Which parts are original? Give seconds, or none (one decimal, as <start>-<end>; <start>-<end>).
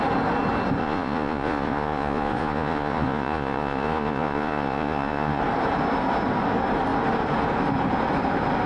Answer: 0.0-0.8; 5.4-8.7